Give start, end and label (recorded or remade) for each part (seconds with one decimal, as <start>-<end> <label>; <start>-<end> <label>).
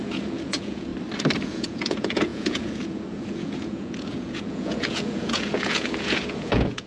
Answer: 0.0-0.9 remade; 0.9-1.4 recorded; 1.4-6.9 remade